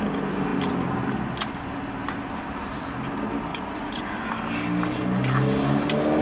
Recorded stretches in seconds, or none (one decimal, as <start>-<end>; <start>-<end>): 0.0-3.5; 4.3-6.2